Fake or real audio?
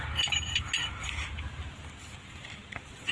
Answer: real